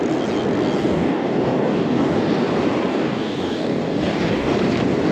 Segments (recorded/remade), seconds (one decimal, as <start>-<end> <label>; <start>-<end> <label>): 0.0-0.8 recorded; 0.8-2.2 remade; 2.2-2.9 recorded; 2.9-4.6 remade; 4.6-5.1 recorded